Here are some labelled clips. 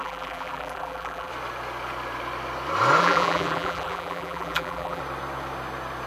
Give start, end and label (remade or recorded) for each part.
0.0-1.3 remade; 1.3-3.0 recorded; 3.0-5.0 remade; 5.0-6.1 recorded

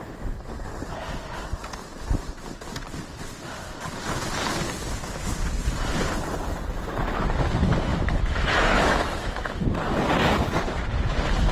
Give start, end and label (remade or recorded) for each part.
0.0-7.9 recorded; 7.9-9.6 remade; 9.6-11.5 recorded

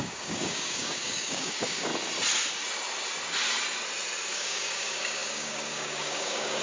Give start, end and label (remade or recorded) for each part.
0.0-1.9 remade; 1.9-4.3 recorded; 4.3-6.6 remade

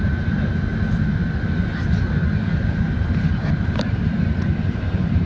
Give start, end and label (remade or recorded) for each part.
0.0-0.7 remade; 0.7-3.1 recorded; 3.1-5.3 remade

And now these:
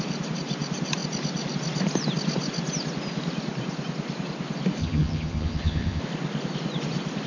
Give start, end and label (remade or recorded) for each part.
0.0-4.8 recorded; 4.8-6.0 remade; 6.0-7.3 recorded